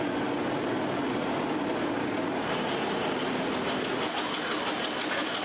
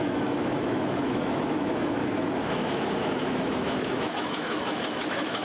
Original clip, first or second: first